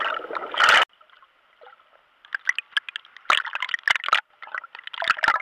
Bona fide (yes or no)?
yes